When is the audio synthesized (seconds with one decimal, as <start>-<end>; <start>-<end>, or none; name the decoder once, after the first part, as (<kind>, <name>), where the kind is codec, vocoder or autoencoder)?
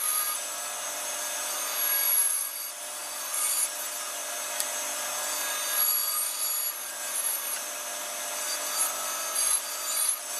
none